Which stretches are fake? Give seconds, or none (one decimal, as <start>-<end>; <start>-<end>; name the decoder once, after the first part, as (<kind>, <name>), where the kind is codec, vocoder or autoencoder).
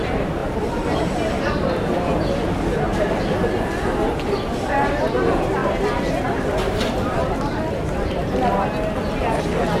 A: 2.9-3.5 (vocoder, BigVGAN v2)